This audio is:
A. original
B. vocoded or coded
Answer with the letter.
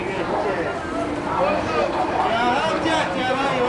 A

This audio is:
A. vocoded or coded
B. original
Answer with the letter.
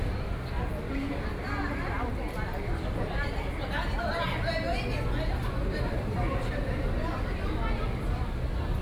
B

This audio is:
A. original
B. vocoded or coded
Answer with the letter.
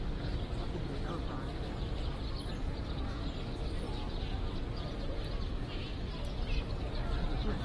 A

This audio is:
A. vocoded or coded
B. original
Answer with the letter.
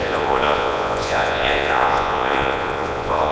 A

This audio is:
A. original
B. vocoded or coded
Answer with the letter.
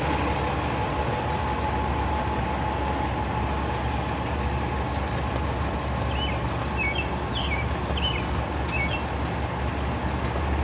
A